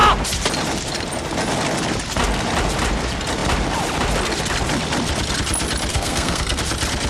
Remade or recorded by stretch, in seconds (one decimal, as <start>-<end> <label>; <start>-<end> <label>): 0.0-5.9 recorded; 5.9-6.6 remade; 6.6-7.1 recorded